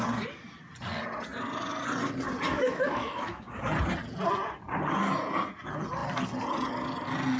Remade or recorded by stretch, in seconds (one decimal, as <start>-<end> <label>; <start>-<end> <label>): 0.0-2.5 recorded; 2.5-3.6 remade; 3.6-7.4 recorded